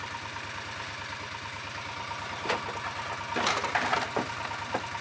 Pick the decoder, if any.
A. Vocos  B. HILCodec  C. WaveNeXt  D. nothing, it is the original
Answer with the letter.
D